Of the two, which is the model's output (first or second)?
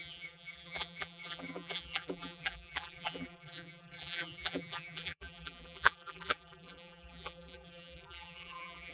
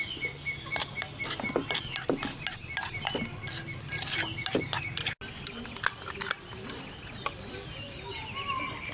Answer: first